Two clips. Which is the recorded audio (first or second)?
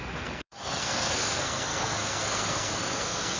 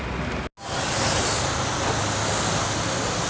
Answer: second